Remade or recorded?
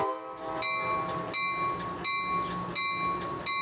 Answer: recorded